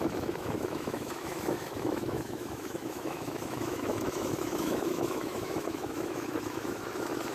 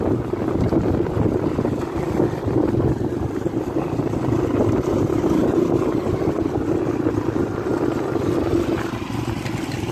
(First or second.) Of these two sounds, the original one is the second